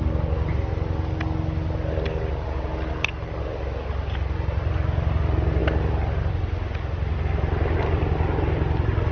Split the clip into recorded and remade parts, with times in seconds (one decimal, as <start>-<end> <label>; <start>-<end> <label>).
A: 0.0-9.1 recorded